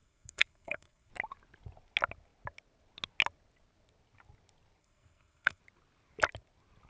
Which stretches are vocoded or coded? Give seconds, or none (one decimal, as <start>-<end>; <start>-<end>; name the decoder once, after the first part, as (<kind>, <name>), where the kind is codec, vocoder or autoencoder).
0.0-1.1 (codec, SNAC); 4.8-5.6